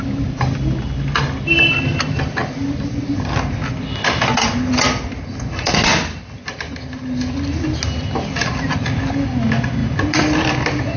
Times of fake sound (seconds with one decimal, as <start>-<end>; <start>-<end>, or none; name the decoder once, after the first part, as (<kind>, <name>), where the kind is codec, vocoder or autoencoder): none